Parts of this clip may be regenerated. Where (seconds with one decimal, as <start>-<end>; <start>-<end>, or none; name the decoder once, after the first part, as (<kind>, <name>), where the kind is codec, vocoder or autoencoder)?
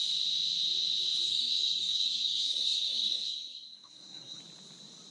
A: 1.3-4.4 (codec, SNAC)